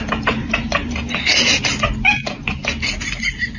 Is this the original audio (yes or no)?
yes